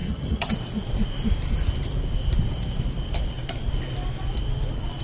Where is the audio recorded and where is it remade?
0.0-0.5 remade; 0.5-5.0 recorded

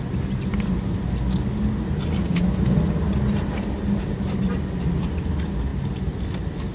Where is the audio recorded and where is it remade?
0.0-6.7 recorded

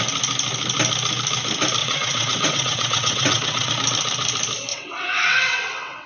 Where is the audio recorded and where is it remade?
0.0-1.8 recorded; 1.8-3.7 remade; 3.7-4.7 recorded; 4.7-6.1 remade